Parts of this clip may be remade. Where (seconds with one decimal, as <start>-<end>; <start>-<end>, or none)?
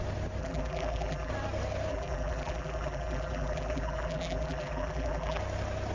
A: 0.4-1.3; 1.9-5.4